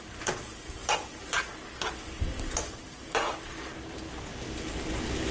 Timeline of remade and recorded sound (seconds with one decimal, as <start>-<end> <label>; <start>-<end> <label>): 0.0-5.3 recorded